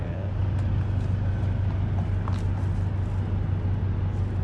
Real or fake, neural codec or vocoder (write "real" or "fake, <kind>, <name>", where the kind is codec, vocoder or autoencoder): real